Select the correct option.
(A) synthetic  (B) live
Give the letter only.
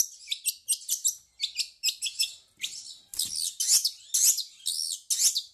B